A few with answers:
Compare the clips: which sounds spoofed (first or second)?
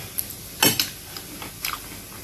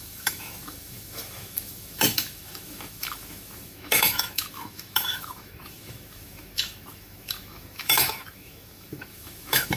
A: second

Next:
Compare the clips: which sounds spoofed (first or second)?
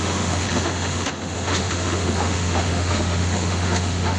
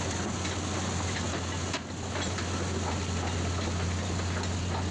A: first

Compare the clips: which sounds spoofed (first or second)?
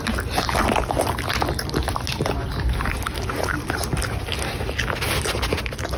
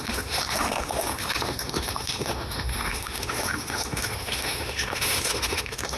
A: second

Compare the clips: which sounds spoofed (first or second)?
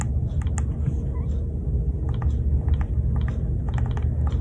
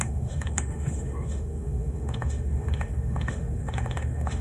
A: second